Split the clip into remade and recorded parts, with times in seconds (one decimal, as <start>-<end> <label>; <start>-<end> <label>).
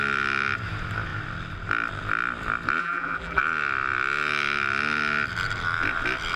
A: 0.0-2.8 recorded; 2.8-3.4 remade; 3.4-6.4 recorded